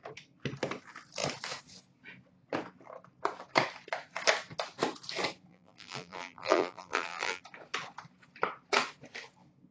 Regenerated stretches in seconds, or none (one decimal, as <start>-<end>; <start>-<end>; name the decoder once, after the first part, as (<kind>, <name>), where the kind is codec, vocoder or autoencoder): 5.5-7.4 (vocoder, BigVGAN v2)

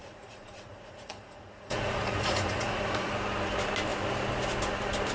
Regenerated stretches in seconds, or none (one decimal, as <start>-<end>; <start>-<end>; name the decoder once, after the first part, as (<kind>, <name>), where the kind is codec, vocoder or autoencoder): 0.0-3.1 (vocoder, Vocos)

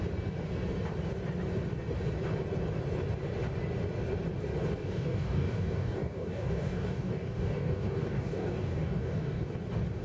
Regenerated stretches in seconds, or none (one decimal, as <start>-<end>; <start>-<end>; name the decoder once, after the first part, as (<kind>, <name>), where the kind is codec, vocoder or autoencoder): 4.8-9.5 (codec, DAC)

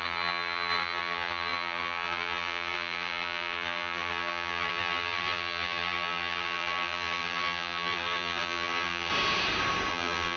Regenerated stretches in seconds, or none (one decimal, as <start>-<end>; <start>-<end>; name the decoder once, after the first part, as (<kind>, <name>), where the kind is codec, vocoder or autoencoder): 0.0-9.1 (vocoder, BigVGAN v2); 9.9-10.4

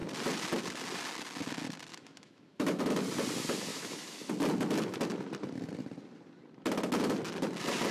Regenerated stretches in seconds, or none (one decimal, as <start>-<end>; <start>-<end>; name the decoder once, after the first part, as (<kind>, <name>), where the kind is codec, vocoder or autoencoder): 1.9-2.8 (autoencoder, DAC-VAE); 3.7-4.3

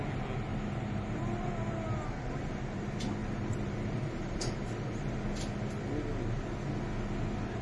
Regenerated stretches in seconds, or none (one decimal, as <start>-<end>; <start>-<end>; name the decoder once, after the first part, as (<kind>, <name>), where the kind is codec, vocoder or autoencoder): 0.5-1.5 (vocoder, BigVGAN v2); 3.2-4.4